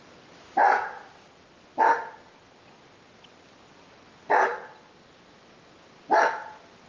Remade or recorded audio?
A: recorded